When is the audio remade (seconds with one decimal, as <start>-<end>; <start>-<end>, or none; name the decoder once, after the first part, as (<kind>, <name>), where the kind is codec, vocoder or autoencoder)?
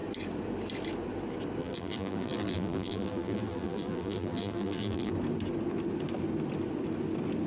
1.6-5.1 (vocoder, BigVGAN v2)